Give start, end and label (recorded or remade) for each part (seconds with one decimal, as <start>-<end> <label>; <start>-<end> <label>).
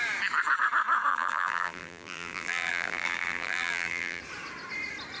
0.0-1.1 recorded; 1.1-4.2 remade; 4.2-5.2 recorded